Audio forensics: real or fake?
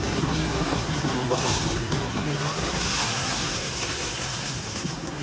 fake